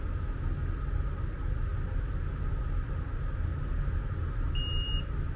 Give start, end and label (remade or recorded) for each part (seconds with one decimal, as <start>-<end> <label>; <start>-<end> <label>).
0.0-5.4 recorded